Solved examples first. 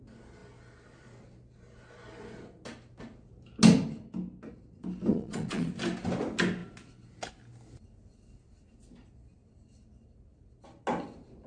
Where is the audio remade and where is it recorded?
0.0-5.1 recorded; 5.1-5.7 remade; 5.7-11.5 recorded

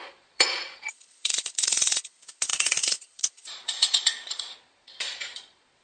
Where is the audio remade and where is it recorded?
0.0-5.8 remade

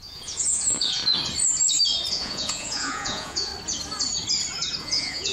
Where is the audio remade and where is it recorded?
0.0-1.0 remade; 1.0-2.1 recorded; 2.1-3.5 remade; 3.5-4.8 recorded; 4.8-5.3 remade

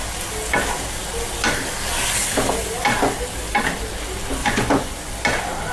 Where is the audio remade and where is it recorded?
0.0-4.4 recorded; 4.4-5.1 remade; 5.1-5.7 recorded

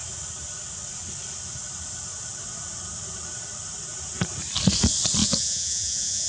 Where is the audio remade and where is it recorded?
0.0-5.2 recorded; 5.2-6.3 remade